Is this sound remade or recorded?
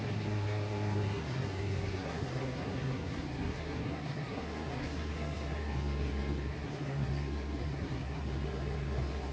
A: remade